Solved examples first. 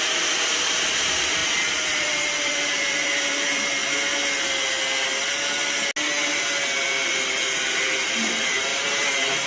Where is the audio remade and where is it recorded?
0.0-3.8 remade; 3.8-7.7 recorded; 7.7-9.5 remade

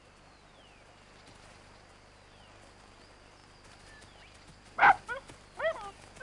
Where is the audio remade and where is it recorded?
0.0-6.2 recorded

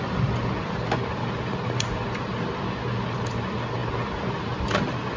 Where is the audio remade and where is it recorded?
0.0-5.2 recorded